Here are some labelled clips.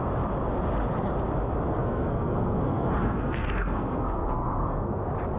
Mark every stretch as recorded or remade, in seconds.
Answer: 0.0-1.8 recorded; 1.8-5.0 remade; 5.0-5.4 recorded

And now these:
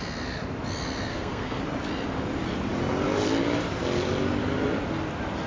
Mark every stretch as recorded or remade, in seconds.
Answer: 0.0-1.1 recorded; 1.1-1.6 remade; 1.6-5.5 recorded

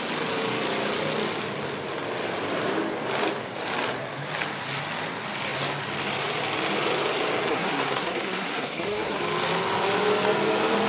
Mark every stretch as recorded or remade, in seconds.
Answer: 0.0-7.5 recorded; 7.5-9.2 remade; 9.2-10.9 recorded

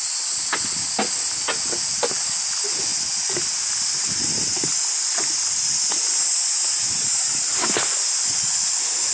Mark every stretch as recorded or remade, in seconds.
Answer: 0.0-9.1 recorded

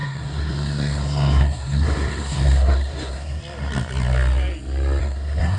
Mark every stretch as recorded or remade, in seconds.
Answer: 0.0-3.4 remade; 3.4-5.0 recorded; 5.0-5.6 remade

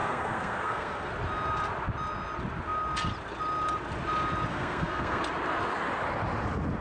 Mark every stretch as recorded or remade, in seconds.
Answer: 0.0-1.1 remade; 1.1-4.5 recorded; 4.5-5.2 remade; 5.2-6.8 recorded